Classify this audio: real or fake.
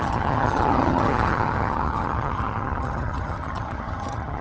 fake